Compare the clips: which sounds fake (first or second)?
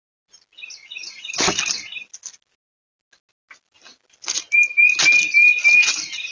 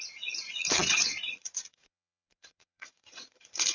second